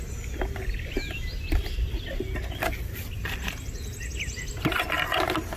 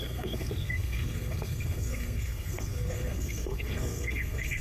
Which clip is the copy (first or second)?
second